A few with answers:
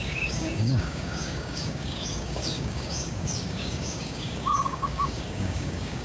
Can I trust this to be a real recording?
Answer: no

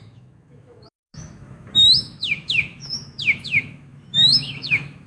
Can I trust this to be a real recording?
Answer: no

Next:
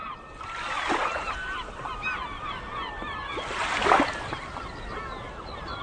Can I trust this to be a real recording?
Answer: yes